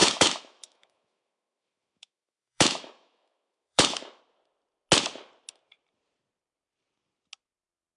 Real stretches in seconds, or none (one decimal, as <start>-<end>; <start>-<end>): 4.2-8.0